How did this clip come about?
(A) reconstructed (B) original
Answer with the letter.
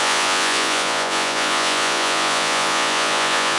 A